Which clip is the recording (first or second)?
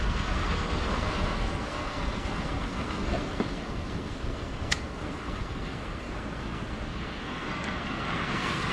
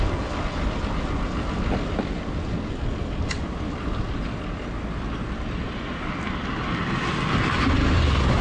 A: second